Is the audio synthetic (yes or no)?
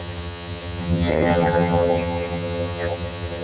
yes